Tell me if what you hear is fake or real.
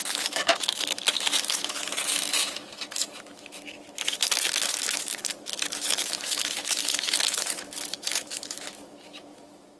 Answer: fake